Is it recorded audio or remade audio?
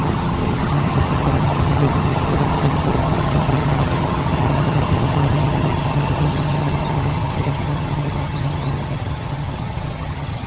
remade